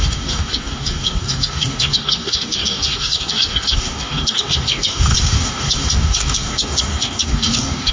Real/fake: fake